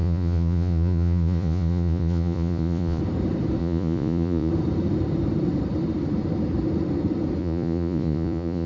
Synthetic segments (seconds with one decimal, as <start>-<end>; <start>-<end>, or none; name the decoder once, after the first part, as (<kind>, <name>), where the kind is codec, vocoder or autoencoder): 0.0-3.0 (vocoder, Vocos); 3.6-4.5; 7.4-8.7